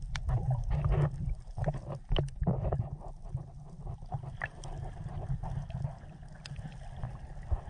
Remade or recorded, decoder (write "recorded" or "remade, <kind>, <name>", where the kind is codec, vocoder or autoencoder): recorded